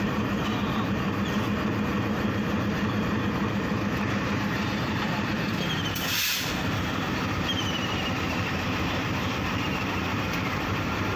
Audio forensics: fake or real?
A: fake